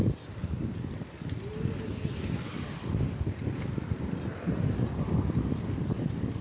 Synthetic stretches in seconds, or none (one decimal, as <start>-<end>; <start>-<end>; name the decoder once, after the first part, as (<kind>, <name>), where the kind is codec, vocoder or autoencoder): none